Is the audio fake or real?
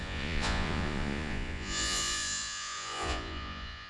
fake